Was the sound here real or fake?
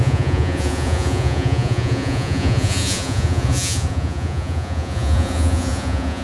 fake